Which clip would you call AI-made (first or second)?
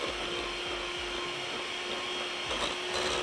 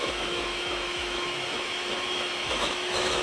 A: second